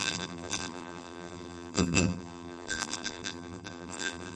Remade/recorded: remade